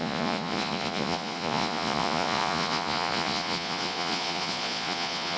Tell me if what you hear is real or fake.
fake